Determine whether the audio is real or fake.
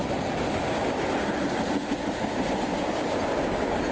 real